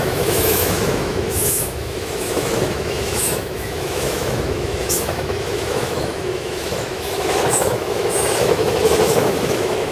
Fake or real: fake